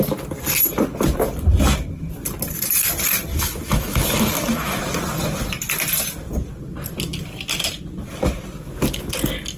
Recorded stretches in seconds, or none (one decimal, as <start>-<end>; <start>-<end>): 0.0-3.3; 4.8-9.6